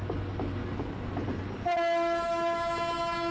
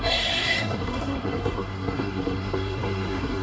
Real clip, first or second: first